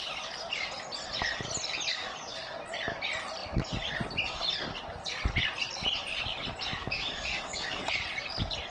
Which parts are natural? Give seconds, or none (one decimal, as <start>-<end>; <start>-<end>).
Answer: 0.0-1.9; 2.4-6.8; 7.9-8.7